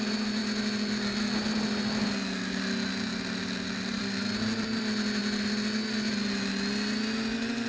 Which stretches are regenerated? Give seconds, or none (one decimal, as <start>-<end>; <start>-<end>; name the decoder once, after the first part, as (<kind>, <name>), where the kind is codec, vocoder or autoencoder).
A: 3.1-4.8 (vocoder, BigVGAN v2)

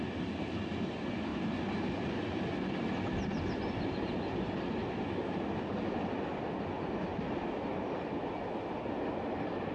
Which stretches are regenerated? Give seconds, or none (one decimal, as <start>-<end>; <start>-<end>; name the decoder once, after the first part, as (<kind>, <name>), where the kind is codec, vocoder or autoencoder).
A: none